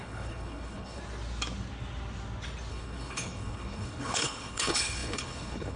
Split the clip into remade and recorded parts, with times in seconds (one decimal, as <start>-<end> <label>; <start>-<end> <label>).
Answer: 0.0-1.0 remade; 1.0-2.7 recorded; 2.7-5.8 remade